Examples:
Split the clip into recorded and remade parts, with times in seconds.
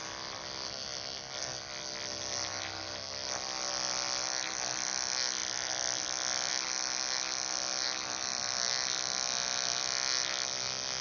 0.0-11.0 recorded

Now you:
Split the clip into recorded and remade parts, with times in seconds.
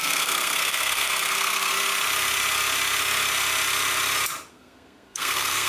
0.0-1.7 remade; 1.7-4.5 recorded; 4.5-5.7 remade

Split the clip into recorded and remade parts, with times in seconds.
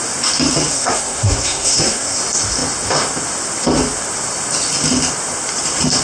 0.0-0.7 recorded; 0.7-2.2 remade; 2.2-6.0 recorded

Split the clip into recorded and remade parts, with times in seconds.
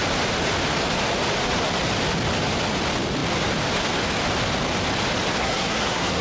0.0-5.4 recorded; 5.4-6.2 remade